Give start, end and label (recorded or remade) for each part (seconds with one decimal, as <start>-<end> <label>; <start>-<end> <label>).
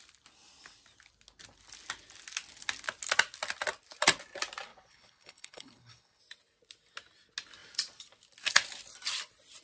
0.0-4.7 recorded; 4.7-6.2 remade; 6.2-9.6 recorded